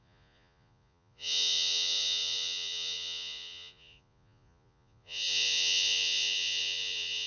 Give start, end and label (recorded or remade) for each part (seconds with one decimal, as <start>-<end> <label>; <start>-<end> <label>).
0.0-7.3 remade